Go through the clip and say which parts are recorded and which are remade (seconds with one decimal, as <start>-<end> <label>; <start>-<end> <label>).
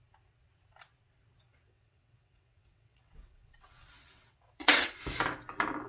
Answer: 0.0-1.5 recorded; 1.5-5.0 remade; 5.0-5.9 recorded